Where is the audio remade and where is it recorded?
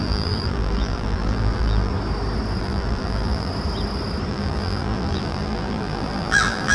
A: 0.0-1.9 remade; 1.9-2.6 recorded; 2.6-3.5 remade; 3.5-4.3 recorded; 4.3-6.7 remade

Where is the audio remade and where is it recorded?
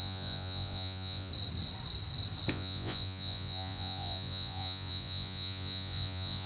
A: 0.0-1.3 remade; 1.3-2.5 recorded; 2.5-6.5 remade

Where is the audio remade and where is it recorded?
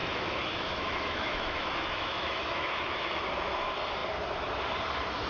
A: 0.0-3.2 remade; 3.2-5.3 recorded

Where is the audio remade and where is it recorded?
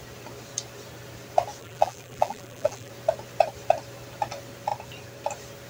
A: 0.0-1.6 recorded; 1.6-2.9 remade; 2.9-5.7 recorded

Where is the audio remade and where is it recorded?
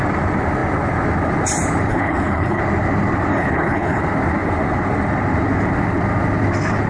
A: 0.0-1.9 recorded; 1.9-2.6 remade; 2.6-3.3 recorded; 3.3-4.0 remade; 4.0-6.9 recorded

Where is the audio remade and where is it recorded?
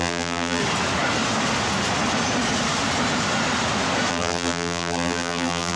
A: 0.0-0.6 remade; 0.6-4.1 recorded; 4.1-5.8 remade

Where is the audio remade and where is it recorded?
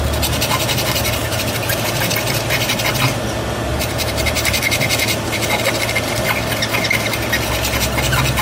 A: 0.0-1.2 recorded; 1.2-2.0 remade; 2.0-3.7 recorded; 3.7-4.6 remade; 4.6-8.4 recorded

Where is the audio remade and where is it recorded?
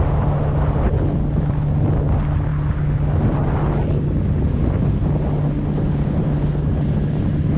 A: 0.0-7.6 recorded